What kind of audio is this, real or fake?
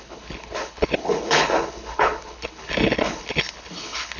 fake